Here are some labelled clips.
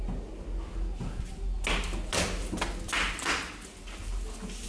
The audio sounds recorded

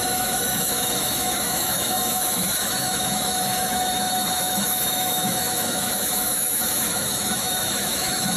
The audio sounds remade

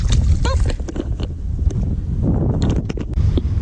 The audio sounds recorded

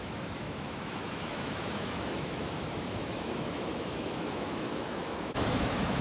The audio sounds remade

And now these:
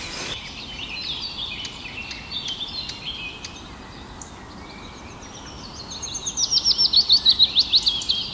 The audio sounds recorded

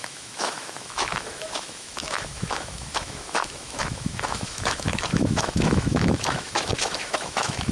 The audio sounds remade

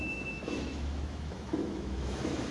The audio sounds remade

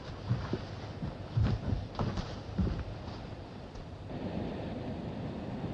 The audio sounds recorded